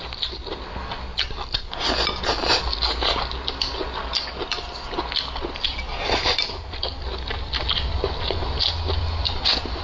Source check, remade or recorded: recorded